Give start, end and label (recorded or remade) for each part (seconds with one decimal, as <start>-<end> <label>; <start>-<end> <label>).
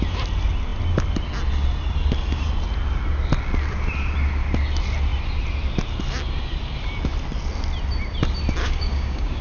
0.0-8.6 recorded; 8.6-9.4 remade